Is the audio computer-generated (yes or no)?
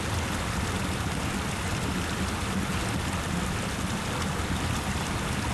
no